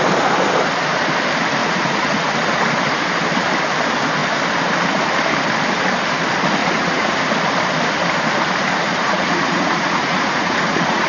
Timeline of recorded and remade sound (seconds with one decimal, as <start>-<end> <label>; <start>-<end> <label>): 0.0-1.6 recorded; 1.6-2.3 remade; 2.3-6.6 recorded; 6.6-7.1 remade; 7.1-8.8 recorded; 8.8-11.1 remade